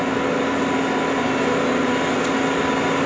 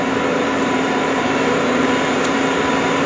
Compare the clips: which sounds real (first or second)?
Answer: first